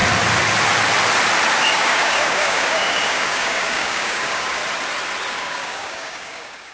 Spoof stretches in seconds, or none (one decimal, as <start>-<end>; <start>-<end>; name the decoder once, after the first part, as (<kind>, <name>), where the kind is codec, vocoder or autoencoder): 1.6-4.6 (codec, DAC); 5.3-6.7